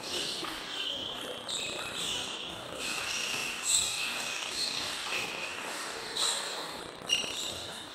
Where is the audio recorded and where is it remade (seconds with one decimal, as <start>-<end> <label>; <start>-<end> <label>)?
0.0-1.2 remade; 1.2-2.0 recorded; 2.0-6.8 remade; 6.8-7.5 recorded; 7.5-7.9 remade